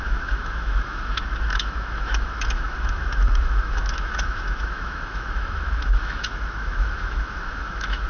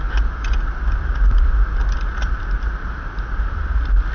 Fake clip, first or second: first